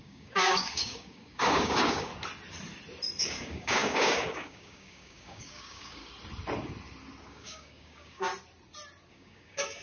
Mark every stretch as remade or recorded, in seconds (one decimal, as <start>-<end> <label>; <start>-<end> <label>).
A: 0.0-2.1 remade; 2.1-3.2 recorded; 3.2-6.0 remade; 6.0-7.3 recorded; 7.3-8.3 remade; 8.3-9.1 recorded; 9.1-9.8 remade